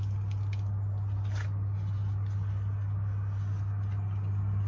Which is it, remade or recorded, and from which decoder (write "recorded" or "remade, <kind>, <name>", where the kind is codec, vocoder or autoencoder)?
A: recorded